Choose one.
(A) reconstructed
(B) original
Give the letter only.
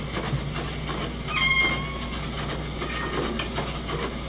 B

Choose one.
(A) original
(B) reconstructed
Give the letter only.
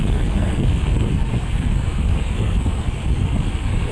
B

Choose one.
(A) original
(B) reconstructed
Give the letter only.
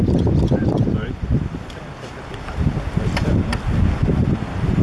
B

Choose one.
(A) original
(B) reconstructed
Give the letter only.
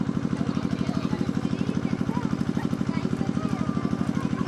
A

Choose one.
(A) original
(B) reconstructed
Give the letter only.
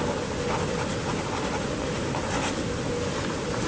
A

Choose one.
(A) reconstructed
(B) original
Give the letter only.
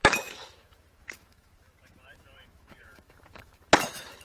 A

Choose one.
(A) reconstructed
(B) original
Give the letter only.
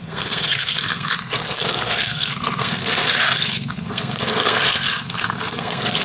A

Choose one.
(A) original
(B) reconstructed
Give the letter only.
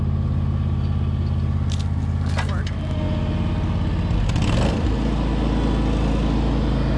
A